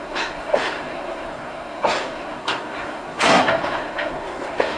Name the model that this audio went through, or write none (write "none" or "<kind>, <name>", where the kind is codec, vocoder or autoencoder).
codec, SNAC